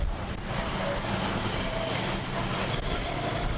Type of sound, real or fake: real